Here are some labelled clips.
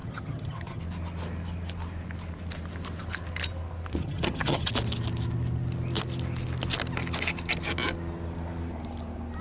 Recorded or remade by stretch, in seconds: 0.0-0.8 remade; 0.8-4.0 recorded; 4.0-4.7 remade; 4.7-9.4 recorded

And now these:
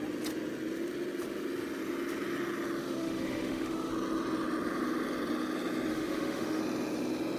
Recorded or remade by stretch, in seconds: 0.0-2.8 recorded; 2.8-3.9 remade; 3.9-5.9 recorded; 5.9-6.6 remade; 6.6-7.4 recorded

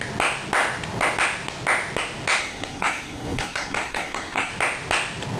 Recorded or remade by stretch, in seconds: 0.0-2.4 recorded; 2.4-4.5 remade; 4.5-5.4 recorded

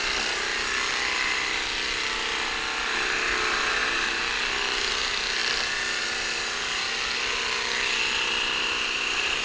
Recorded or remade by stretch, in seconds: 0.0-9.4 recorded

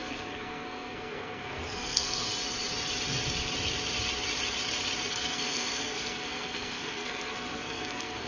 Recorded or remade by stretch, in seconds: 0.0-2.3 remade; 2.3-5.1 recorded; 5.1-8.3 remade